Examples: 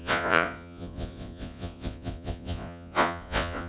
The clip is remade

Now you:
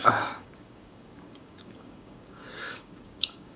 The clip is remade